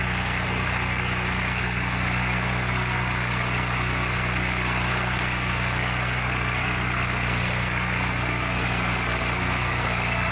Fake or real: fake